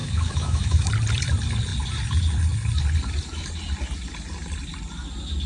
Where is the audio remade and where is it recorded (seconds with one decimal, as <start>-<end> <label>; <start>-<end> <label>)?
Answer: 0.0-0.9 remade; 0.9-5.5 recorded